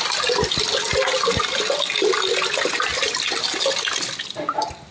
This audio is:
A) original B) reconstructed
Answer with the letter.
A